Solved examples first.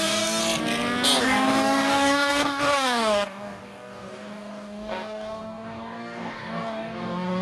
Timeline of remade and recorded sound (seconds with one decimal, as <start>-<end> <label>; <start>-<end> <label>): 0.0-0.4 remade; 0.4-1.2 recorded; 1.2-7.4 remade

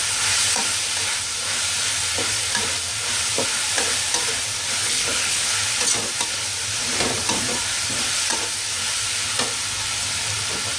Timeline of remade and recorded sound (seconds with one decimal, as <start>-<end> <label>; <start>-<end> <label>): 0.0-4.8 recorded; 4.8-5.5 remade; 5.5-10.8 recorded

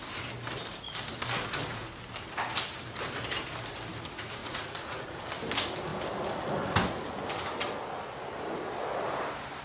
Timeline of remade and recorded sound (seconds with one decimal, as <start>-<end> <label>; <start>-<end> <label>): 0.0-4.4 recorded; 4.4-5.2 remade; 5.2-9.6 recorded

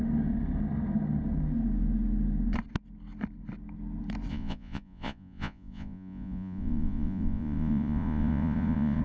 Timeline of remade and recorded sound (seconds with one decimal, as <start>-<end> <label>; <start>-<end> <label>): 0.0-4.3 recorded; 4.3-9.0 remade

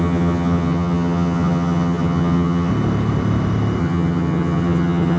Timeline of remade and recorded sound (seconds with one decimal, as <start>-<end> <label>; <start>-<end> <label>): 0.0-2.7 remade; 2.7-3.8 recorded; 3.8-5.2 remade

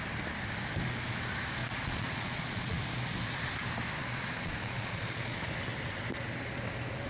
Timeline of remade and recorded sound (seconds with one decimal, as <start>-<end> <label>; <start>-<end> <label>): 0.0-1.6 recorded; 1.6-2.8 remade; 2.8-4.0 recorded; 4.0-5.5 remade; 5.5-7.1 recorded